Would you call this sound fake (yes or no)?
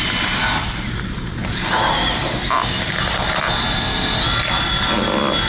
no